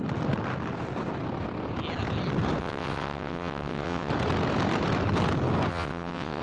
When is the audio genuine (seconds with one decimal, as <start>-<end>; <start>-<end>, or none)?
0.0-2.6; 4.1-5.7